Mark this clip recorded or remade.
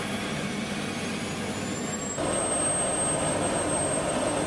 recorded